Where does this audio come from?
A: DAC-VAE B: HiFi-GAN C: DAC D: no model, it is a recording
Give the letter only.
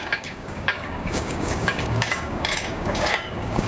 C